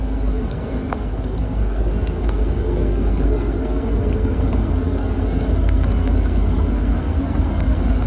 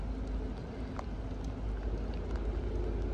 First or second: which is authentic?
second